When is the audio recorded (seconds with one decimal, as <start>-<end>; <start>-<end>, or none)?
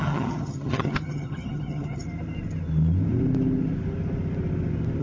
2.0-5.0